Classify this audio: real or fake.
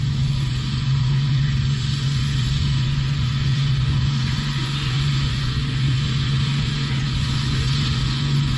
fake